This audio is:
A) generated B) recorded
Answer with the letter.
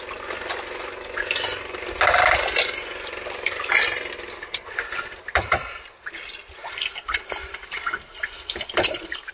B